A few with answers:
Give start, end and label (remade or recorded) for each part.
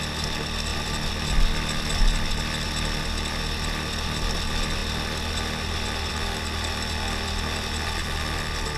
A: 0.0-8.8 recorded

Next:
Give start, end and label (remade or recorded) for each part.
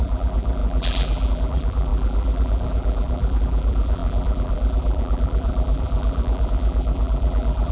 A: 0.0-7.7 remade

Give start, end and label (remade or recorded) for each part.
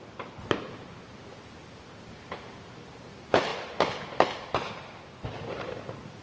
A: 0.0-6.2 remade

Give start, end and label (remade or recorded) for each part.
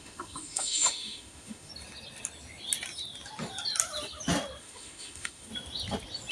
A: 0.0-1.7 remade; 1.7-4.6 recorded; 4.6-5.5 remade; 5.5-6.3 recorded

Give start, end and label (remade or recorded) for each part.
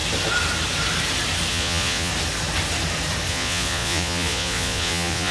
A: 0.0-1.5 recorded; 1.5-2.1 remade; 2.1-3.3 recorded; 3.3-5.3 remade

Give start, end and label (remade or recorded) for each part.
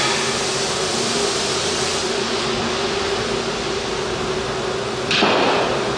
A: 0.0-2.0 recorded; 2.0-2.8 remade; 2.8-6.0 recorded